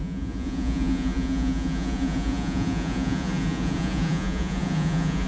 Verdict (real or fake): fake